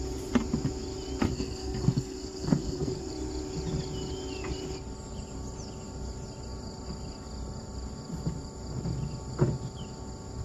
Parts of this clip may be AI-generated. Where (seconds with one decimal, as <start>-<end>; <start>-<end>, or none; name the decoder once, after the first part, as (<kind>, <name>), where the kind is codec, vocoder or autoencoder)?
1.3-3.1 (codec, SNAC)